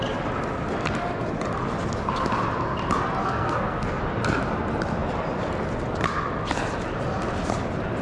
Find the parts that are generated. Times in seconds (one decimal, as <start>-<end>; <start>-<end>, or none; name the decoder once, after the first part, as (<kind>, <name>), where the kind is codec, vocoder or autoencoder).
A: 3.2-4.0 (codec, SNAC)